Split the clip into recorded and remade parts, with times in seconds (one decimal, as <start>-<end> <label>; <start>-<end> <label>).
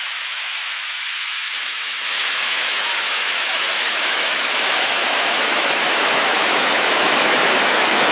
0.0-8.1 remade